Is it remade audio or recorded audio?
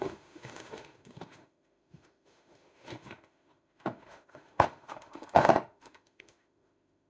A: remade